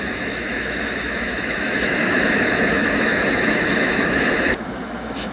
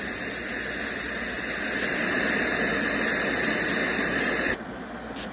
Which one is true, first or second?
second